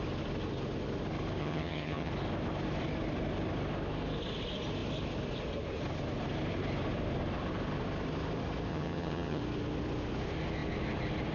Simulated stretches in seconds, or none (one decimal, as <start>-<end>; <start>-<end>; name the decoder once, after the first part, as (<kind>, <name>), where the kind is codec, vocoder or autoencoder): 1.4-2.1 (vocoder, HiFi-GAN); 8.7-9.4